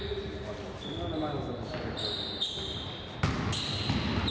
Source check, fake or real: real